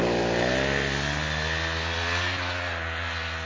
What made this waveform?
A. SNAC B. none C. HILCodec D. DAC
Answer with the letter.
B